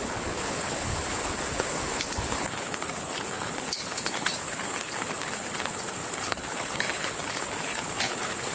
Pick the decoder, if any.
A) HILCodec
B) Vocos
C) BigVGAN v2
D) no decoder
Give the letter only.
A